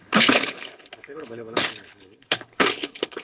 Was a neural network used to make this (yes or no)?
yes